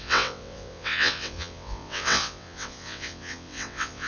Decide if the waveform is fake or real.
fake